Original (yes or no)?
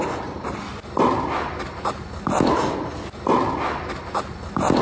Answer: yes